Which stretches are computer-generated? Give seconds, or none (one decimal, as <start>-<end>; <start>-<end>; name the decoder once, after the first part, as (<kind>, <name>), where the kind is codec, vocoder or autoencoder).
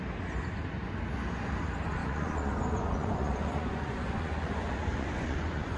2.0-5.8 (vocoder, Vocos)